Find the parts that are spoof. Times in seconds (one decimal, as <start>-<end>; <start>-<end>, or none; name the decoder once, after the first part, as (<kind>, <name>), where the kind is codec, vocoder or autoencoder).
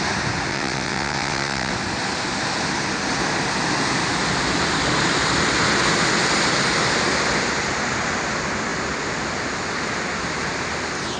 0.5-1.7 (vocoder, WaveNeXt)